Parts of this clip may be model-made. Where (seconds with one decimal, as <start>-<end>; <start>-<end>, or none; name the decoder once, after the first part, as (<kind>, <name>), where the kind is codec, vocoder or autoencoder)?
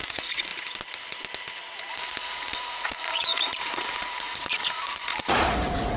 0.0-0.5 (vocoder, Vocos); 1.9-6.0